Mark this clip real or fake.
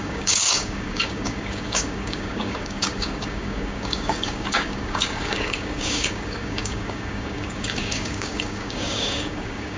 fake